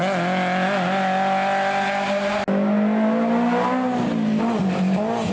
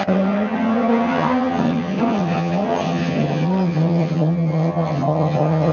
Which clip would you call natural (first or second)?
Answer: first